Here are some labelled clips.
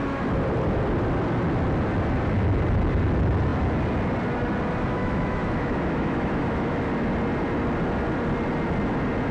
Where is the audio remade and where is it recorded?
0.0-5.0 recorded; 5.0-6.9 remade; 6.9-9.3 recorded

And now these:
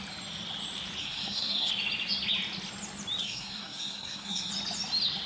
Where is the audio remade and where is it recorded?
0.0-1.0 recorded; 1.0-1.7 remade; 1.7-3.2 recorded; 3.2-4.5 remade; 4.5-5.3 recorded

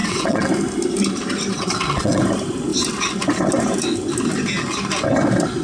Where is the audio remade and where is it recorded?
0.0-0.5 remade; 0.5-1.5 recorded; 1.5-2.2 remade; 2.2-5.6 recorded

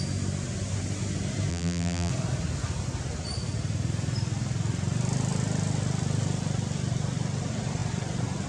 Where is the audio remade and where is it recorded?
0.0-1.5 recorded; 1.5-2.1 remade; 2.1-8.5 recorded

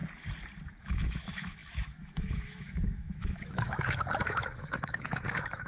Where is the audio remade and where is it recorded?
0.0-0.8 recorded; 0.8-5.7 remade

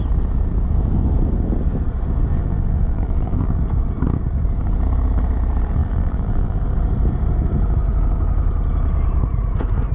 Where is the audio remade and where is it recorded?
0.0-2.3 recorded; 2.3-3.6 remade; 3.6-5.8 recorded; 5.8-6.6 remade; 6.6-9.9 recorded

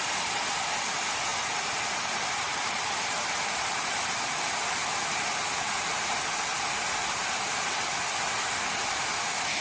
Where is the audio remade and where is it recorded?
0.0-1.3 recorded; 1.3-4.0 remade; 4.0-6.5 recorded; 6.5-7.7 remade; 7.7-9.6 recorded